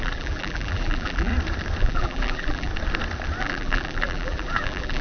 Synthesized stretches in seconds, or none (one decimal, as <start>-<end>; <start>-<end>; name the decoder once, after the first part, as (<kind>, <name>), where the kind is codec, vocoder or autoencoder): 0.0-1.3 (vocoder, BigVGAN v2); 1.8-2.7; 3.4-5.0

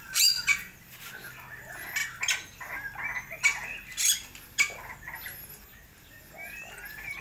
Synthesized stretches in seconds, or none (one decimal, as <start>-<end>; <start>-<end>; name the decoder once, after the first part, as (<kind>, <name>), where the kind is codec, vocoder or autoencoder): none

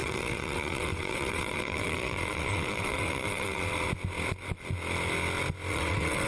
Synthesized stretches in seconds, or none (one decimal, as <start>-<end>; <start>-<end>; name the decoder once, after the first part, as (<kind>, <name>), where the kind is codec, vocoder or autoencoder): 0.0-3.6 (vocoder, WaveNeXt); 5.7-6.3

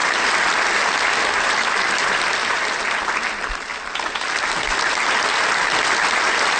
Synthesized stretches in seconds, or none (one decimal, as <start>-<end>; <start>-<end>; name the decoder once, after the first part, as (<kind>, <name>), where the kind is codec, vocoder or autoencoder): none

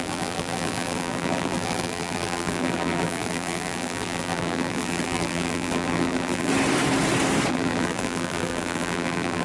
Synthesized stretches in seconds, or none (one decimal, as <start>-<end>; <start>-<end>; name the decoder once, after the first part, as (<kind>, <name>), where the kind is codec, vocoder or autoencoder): 0.0-6.5 (vocoder, BigVGAN v2); 7.5-9.4

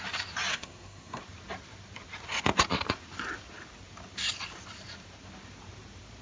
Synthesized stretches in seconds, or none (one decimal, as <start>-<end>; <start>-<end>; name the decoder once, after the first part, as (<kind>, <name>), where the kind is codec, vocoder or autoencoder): 0.5-1.2 (codec, SNAC)

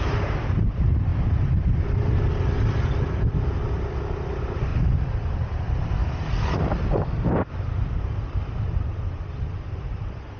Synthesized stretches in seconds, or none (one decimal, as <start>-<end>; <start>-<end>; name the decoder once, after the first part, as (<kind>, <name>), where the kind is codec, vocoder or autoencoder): 0.0-1.1 (vocoder, BigVGAN v2); 4.3-4.7; 5.6-6.0; 7.5-10.4